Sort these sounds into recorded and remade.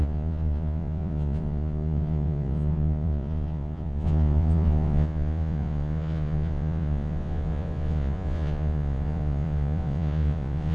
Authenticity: remade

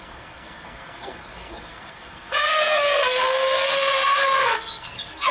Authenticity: remade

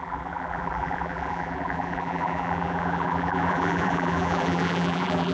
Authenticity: remade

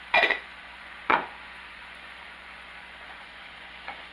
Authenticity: remade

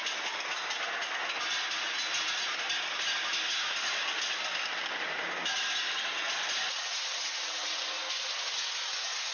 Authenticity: recorded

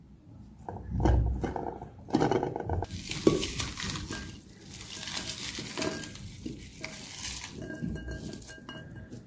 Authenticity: recorded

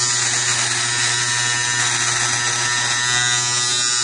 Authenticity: recorded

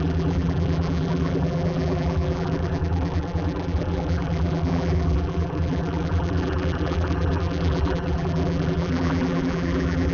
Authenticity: remade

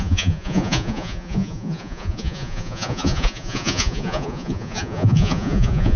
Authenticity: remade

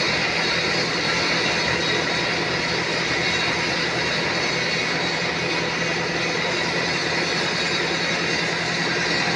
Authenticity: recorded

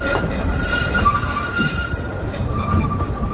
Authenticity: remade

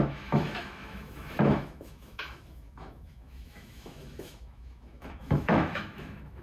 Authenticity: remade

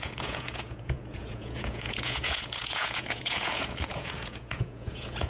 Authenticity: remade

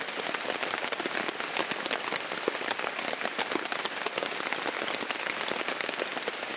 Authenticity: recorded